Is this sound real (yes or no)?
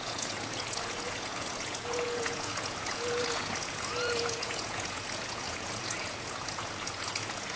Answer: no